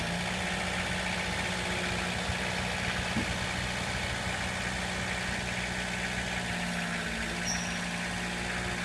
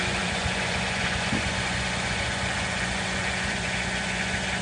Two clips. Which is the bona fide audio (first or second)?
first